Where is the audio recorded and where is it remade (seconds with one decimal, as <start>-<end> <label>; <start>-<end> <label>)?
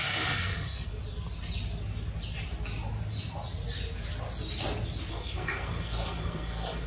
0.0-1.0 remade; 1.0-5.1 recorded; 5.1-6.9 remade